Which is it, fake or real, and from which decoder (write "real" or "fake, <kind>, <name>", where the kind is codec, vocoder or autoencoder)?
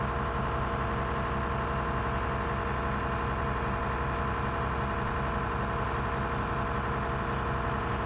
real